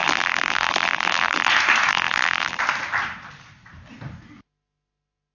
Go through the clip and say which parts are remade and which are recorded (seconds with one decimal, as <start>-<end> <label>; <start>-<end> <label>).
0.0-1.5 remade; 1.5-1.9 recorded; 1.9-2.6 remade; 2.6-5.3 recorded